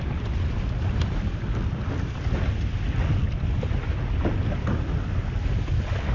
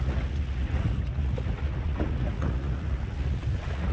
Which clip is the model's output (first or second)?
second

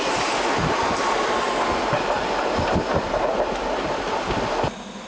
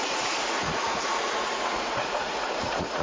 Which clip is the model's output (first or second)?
second